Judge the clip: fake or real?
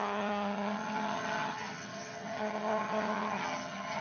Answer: fake